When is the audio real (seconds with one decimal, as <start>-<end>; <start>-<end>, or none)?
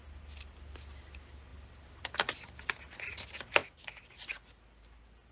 0.0-5.3